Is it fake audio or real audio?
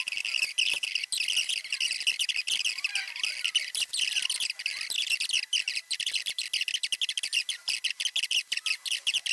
real